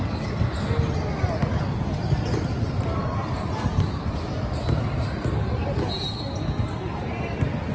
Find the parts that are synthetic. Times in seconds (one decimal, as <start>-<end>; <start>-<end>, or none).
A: none